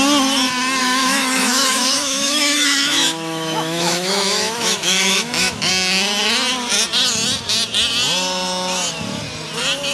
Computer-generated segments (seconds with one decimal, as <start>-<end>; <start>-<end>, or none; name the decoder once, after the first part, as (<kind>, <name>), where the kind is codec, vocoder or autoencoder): 0.8-5.7 (autoencoder, DAC-VAE)

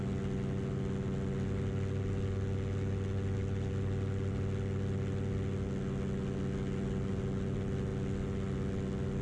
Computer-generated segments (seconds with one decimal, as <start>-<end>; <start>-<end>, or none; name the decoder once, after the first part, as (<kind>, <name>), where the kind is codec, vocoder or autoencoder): none

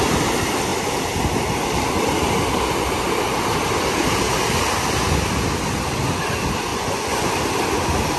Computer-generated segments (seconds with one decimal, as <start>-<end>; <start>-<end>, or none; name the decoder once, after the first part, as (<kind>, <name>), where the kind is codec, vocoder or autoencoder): 6.7-7.3 (vocoder, Vocos)